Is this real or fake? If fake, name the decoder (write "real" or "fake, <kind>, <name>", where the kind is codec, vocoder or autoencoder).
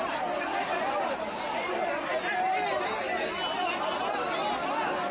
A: real